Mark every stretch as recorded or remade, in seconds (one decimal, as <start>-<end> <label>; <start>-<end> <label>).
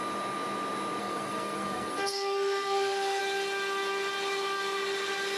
0.0-1.0 recorded; 1.0-3.2 remade; 3.2-5.4 recorded